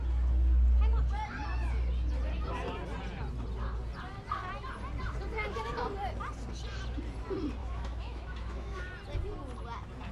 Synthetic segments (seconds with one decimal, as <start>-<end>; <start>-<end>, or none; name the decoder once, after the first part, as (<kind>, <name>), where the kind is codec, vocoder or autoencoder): 7.6-8.9 (autoencoder, DAC-VAE)